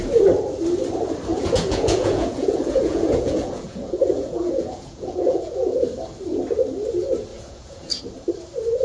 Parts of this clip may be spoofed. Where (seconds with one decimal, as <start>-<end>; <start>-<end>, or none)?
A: 1.3-5.8; 7.3-8.0